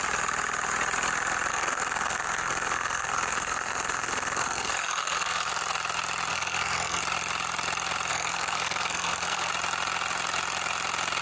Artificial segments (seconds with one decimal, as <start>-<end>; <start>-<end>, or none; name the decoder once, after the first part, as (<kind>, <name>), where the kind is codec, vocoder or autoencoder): 1.5-5.5 (codec, SNAC); 6.3-7.0; 8.1-9.5